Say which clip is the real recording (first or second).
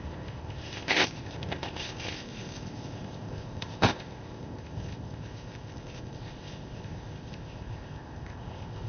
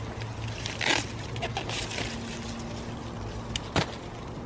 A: second